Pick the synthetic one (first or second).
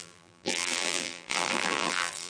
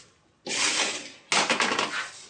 first